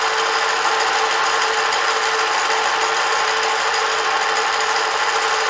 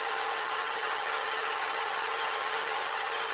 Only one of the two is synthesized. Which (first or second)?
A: second